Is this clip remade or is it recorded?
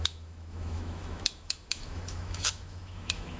remade